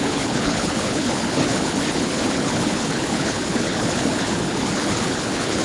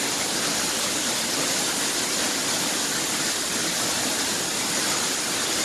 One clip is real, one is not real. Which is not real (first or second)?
first